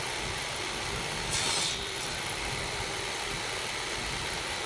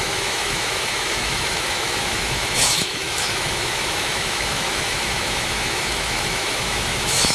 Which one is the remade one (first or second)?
second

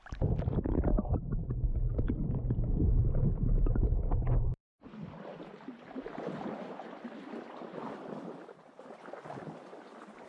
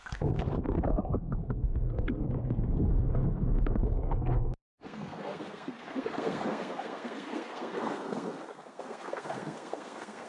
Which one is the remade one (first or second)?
second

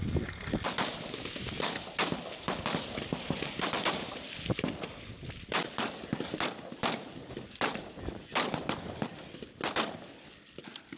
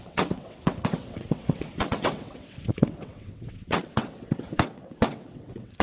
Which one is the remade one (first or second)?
second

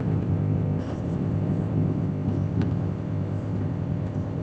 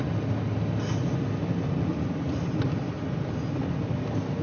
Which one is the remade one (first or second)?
first